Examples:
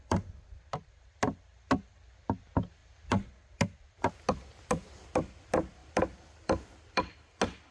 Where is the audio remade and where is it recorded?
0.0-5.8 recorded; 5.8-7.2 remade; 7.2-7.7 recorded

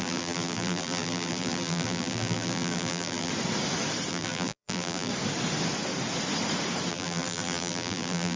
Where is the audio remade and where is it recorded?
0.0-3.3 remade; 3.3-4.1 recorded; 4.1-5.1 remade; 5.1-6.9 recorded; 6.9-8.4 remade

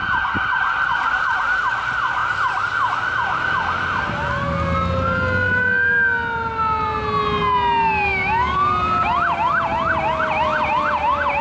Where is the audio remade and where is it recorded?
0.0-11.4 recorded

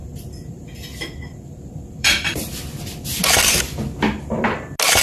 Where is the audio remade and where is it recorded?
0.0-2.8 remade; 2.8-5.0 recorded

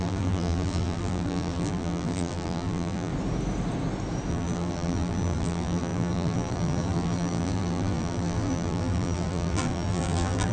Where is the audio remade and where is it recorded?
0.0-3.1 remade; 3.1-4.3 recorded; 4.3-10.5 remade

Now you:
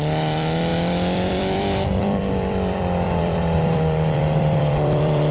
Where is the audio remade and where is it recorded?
0.0-5.3 remade